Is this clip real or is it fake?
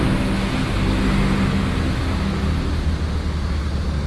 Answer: real